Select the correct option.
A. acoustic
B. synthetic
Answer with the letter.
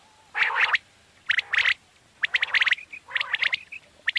A